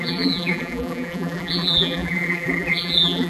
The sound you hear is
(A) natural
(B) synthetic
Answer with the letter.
B